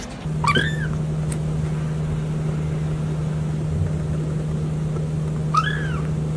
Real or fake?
real